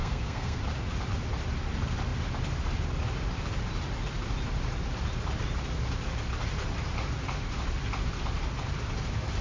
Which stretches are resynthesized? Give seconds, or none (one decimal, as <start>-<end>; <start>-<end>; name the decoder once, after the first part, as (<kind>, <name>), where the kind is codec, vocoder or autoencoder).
0.0-0.6 (codec, SNAC)

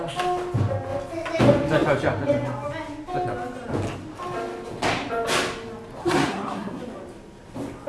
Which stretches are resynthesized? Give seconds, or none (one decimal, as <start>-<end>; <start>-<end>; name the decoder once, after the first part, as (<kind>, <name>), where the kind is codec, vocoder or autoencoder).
6.0-6.8 (codec, SNAC)

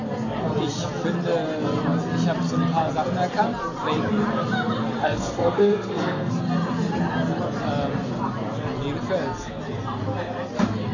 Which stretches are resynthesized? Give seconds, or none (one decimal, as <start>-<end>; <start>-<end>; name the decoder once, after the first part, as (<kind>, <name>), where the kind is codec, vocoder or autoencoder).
5.0-6.3 (codec, SNAC)

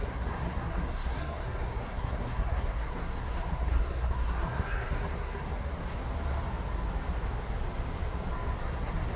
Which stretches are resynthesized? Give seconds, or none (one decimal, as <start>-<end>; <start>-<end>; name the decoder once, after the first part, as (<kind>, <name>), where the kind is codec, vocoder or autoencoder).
0.0-5.7 (codec, SNAC); 8.6-9.2

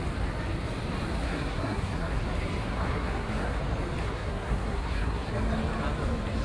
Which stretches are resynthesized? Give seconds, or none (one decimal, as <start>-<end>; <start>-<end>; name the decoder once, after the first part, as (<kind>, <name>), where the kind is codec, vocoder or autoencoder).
1.2-2.2 (codec, SNAC); 2.6-3.6; 4.0-5.3